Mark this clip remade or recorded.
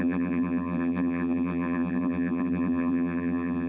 remade